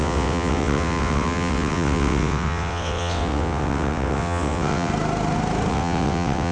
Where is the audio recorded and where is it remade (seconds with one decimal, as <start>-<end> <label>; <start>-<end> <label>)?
0.0-4.9 remade; 4.9-5.7 recorded; 5.7-6.5 remade